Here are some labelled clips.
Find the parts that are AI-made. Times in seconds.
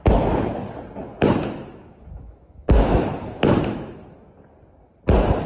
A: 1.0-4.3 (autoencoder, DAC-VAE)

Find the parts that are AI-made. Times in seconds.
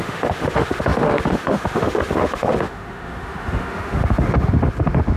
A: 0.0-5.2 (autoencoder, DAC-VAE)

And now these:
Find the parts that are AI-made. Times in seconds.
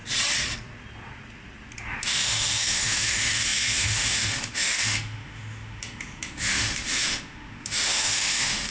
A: 2.0-8.7 (autoencoder, DAC-VAE)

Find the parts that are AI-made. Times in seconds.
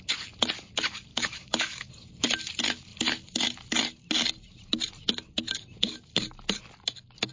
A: 1.1-1.9 (autoencoder, DAC-VAE)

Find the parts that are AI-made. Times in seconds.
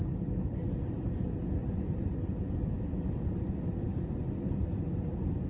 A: none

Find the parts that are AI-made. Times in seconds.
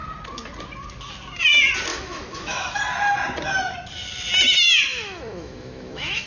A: 1.9-2.8 (autoencoder, DAC-VAE); 4.9-6.3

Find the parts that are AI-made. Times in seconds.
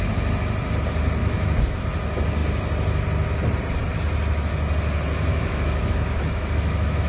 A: 1.2-1.8 (autoencoder, DAC-VAE); 5.3-7.1